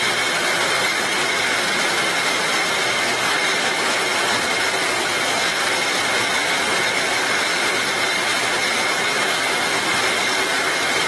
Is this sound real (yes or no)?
yes